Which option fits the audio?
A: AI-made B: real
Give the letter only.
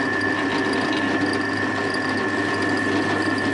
B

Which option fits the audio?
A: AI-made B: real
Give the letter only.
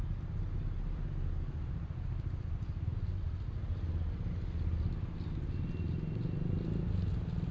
B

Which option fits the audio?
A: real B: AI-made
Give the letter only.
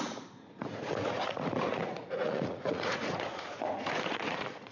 B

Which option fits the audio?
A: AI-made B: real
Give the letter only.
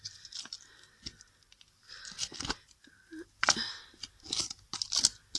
B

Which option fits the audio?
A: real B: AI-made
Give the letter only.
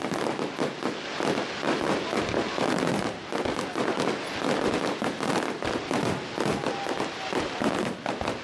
A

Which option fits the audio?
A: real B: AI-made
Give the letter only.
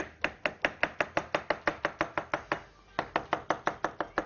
A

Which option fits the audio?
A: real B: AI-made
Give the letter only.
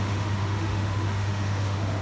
B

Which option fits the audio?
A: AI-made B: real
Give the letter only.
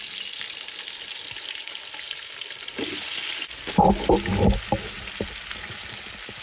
B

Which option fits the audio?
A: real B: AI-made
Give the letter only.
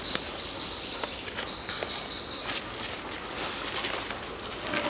A